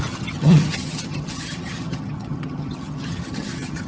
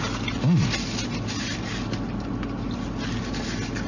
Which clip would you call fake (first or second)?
first